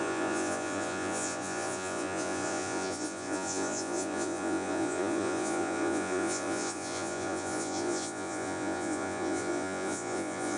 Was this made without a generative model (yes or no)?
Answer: no